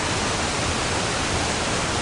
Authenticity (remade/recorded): recorded